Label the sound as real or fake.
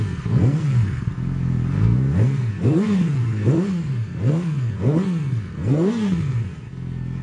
fake